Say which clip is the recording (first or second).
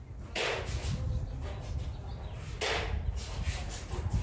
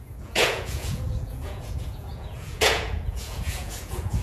first